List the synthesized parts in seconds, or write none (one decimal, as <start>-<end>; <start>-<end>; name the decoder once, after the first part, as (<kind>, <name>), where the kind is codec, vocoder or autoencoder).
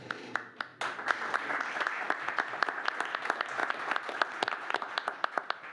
none